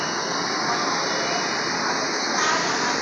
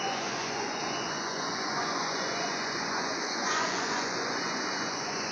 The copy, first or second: second